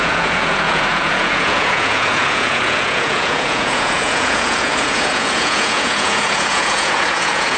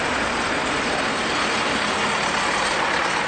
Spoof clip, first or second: first